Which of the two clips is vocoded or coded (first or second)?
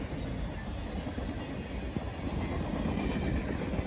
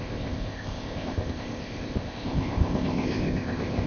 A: second